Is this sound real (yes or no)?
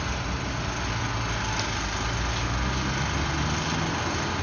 yes